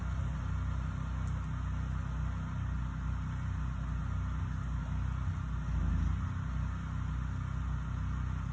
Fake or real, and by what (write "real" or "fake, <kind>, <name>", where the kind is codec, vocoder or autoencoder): real